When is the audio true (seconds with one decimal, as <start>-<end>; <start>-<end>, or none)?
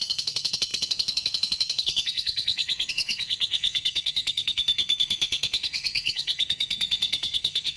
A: none